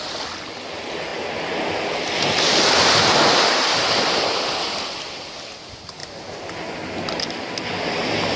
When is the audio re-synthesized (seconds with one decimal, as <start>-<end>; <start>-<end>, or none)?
none